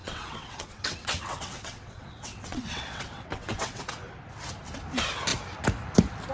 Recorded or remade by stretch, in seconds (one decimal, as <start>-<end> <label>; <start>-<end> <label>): 0.0-3.8 remade; 3.8-6.3 recorded